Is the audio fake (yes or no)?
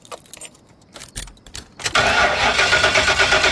no